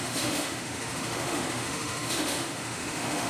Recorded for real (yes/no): no